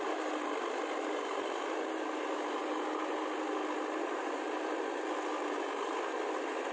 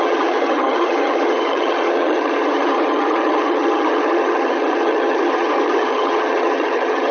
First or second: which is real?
first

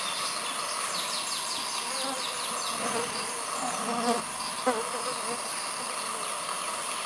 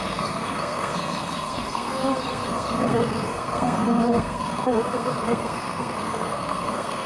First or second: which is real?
first